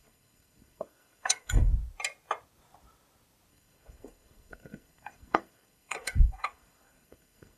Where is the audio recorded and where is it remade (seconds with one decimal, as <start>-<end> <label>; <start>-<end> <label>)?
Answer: 0.0-1.7 remade; 1.7-3.5 recorded; 3.5-7.6 remade